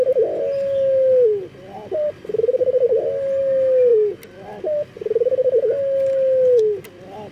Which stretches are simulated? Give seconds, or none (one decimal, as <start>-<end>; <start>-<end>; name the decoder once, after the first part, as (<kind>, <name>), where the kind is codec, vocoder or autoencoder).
none